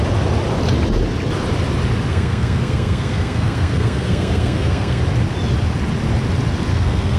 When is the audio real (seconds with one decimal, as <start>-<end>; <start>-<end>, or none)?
0.0-2.1; 5.0-6.7